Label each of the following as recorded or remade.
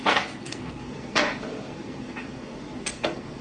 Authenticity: remade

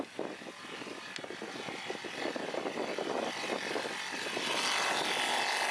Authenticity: recorded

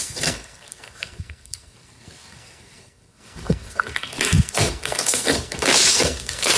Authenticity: remade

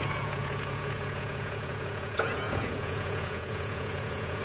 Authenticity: remade